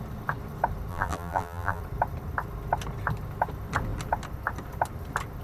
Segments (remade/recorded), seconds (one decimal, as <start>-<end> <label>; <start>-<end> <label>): 0.0-0.9 recorded; 0.9-1.8 remade; 1.8-5.4 recorded